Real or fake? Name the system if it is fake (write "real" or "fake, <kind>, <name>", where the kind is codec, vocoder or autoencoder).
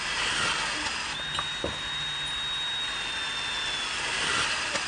real